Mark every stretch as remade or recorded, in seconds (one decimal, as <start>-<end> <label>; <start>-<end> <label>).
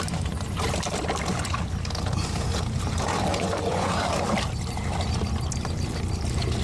0.0-3.3 recorded; 3.3-3.9 remade; 3.9-6.6 recorded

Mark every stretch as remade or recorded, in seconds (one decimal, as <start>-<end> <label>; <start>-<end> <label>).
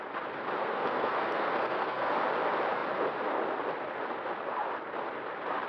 0.0-0.6 recorded; 0.6-2.1 remade; 2.1-5.7 recorded